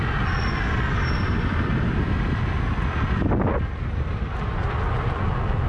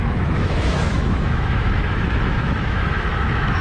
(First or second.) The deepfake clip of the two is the second